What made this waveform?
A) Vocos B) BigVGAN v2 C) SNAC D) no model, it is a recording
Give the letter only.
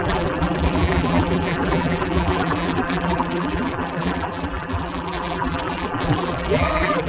B